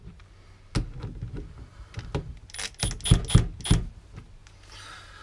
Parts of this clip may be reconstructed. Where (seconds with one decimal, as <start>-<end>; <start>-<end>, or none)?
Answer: none